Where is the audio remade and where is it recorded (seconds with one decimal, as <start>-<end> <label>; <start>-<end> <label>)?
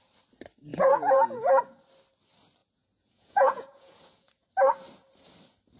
0.0-0.7 recorded; 0.7-1.6 remade; 1.6-2.6 recorded; 2.6-4.5 remade; 4.5-5.8 recorded